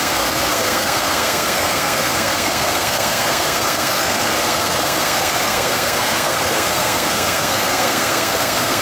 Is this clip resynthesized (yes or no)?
yes